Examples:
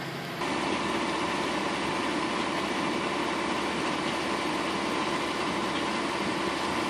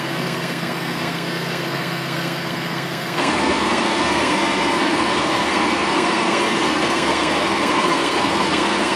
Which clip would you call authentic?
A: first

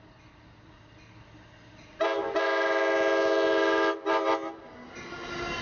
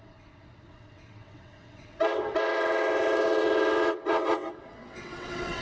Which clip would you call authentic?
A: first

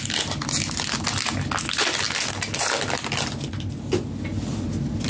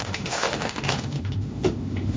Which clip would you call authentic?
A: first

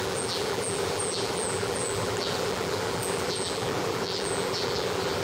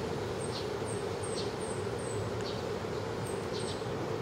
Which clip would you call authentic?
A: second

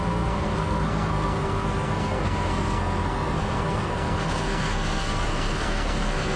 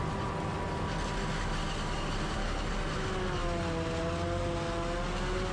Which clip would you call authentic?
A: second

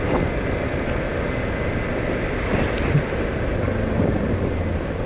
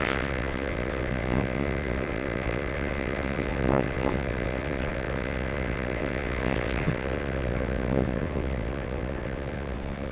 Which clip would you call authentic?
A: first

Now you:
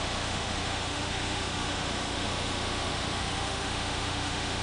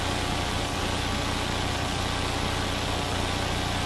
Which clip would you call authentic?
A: second